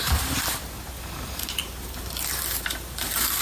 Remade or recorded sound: remade